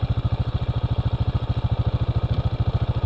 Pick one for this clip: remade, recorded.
recorded